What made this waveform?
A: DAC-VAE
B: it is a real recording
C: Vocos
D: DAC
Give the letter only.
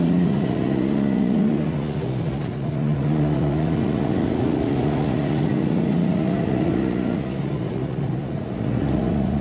C